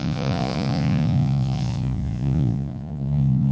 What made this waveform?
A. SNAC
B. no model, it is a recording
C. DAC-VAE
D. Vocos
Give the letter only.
D